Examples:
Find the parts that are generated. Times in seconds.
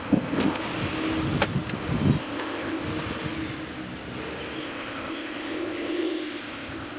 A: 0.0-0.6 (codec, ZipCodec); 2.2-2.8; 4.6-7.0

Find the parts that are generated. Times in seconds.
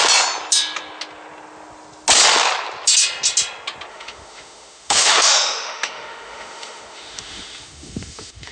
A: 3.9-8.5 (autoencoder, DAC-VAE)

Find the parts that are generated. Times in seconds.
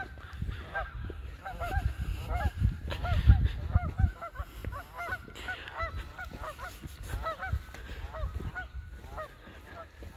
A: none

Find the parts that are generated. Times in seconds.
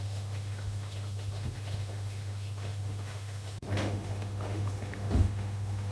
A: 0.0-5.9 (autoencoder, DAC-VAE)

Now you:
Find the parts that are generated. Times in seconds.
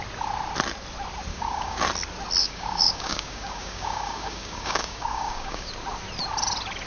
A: 1.3-1.8 (codec, DAC); 2.4-5.7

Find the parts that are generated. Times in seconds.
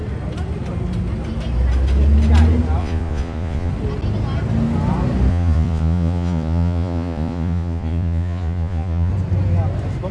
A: 2.8-3.7 (vocoder, Vocos); 5.3-9.1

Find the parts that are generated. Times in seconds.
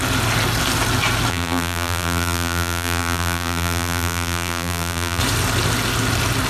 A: 1.3-5.2 (vocoder, BigVGAN v2)